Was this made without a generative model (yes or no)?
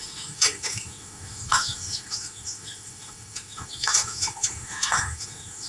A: no